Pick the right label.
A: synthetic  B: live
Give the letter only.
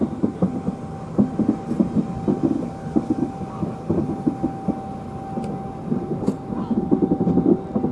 B